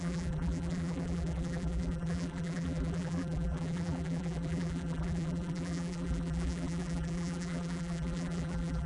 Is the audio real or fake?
fake